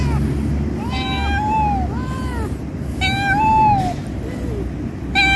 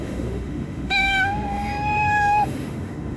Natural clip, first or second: first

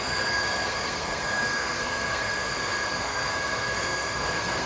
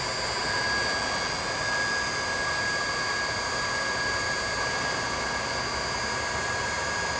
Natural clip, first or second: second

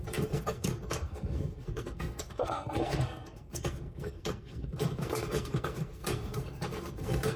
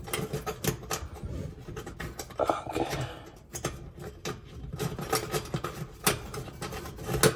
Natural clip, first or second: second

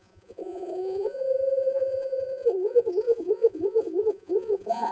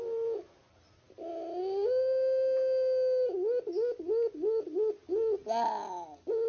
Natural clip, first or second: second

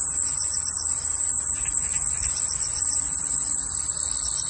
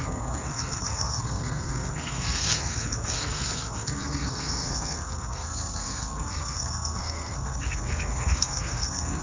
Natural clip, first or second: first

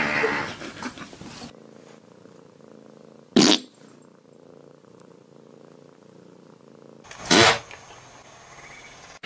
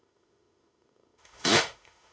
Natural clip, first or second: first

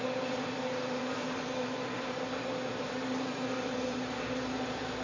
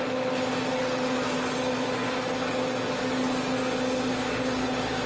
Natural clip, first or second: second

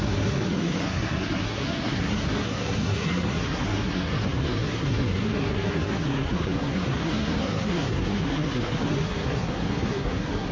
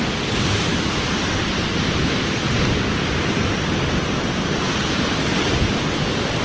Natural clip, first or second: second